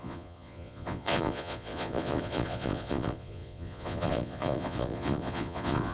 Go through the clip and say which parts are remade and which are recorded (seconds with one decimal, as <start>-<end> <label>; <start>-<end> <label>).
0.0-5.9 remade

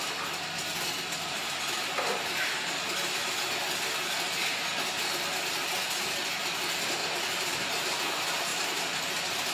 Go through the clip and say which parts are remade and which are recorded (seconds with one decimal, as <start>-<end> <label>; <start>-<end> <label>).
0.0-7.0 recorded; 7.0-7.7 remade; 7.7-8.5 recorded; 8.5-9.1 remade; 9.1-9.5 recorded

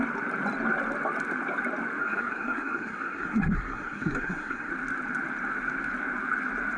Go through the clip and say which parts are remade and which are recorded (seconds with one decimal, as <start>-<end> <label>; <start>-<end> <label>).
0.0-2.0 recorded; 2.0-4.7 remade; 4.7-6.8 recorded

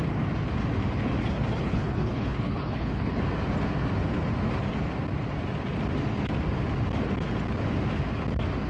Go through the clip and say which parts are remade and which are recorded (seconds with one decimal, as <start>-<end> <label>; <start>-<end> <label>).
0.0-1.6 recorded; 1.6-3.2 remade; 3.2-8.7 recorded

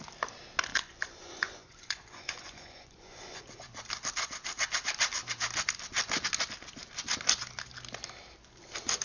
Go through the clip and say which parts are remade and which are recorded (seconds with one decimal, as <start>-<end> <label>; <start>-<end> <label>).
0.0-0.7 recorded; 0.7-3.4 remade; 3.4-9.0 recorded

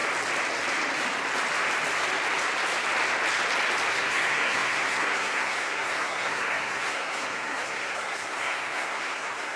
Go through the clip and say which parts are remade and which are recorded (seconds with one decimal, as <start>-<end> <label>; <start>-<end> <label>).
0.0-3.9 recorded; 3.9-9.6 remade